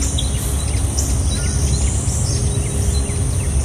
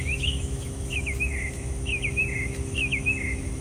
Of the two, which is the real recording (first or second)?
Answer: first